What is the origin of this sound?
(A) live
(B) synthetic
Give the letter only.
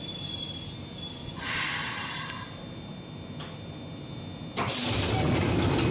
A